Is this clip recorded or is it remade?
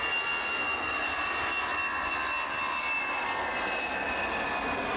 recorded